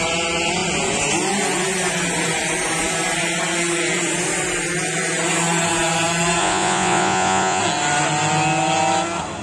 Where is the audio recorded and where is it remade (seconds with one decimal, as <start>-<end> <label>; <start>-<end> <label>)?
0.0-6.4 recorded; 6.4-7.6 remade; 7.6-9.4 recorded